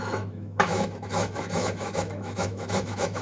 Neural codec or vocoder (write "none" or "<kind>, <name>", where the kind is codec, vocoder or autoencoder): autoencoder, DAC-VAE